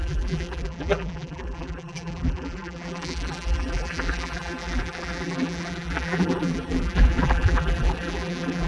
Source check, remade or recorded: remade